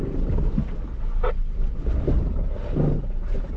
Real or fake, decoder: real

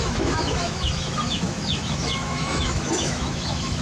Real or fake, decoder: fake, autoencoder, DAC-VAE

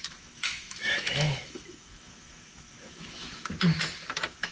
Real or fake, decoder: fake, autoencoder, DAC-VAE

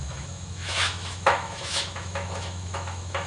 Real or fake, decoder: fake, autoencoder, DAC-VAE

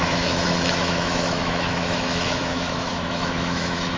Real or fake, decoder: fake, autoencoder, DAC-VAE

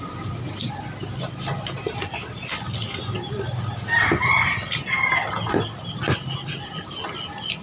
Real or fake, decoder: real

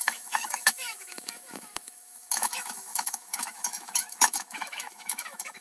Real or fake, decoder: fake, autoencoder, DAC-VAE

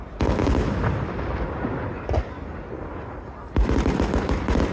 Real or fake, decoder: real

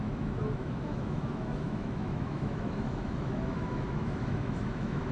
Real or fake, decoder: fake, autoencoder, DAC-VAE